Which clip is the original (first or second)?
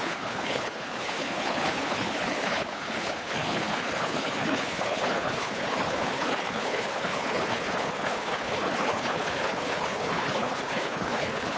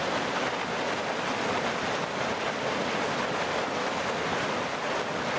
second